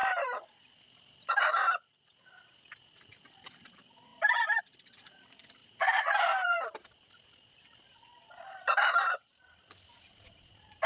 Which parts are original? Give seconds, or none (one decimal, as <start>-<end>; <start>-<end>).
1.3-4.1; 4.6-5.6; 9.9-10.9

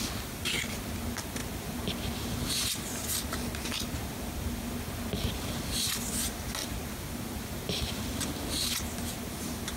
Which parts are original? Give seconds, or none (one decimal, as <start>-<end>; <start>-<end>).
0.0-6.6; 7.9-9.8

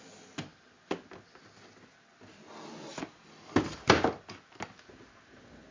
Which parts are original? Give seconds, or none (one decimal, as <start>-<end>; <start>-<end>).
0.0-5.7

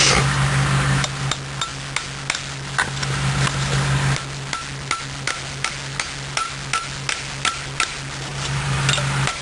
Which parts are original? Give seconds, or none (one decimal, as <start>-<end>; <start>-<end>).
0.0-8.3; 8.8-9.4

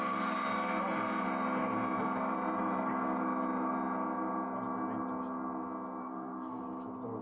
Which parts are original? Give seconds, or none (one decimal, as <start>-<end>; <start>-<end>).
0.0-6.0; 6.6-7.2